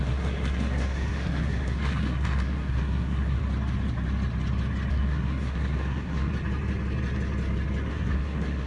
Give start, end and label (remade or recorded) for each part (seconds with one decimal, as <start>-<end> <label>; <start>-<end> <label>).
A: 0.0-3.4 remade; 3.4-4.9 recorded; 4.9-6.3 remade; 6.3-7.9 recorded; 7.9-8.7 remade